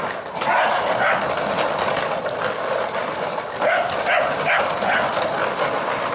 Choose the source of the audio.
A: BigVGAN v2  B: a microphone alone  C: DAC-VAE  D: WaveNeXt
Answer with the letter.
B